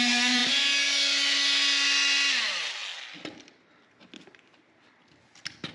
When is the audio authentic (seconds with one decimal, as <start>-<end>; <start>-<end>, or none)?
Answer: 0.0-5.7